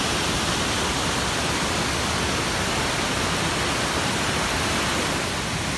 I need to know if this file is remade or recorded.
recorded